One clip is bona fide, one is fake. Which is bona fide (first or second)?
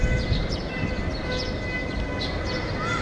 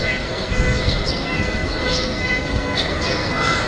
first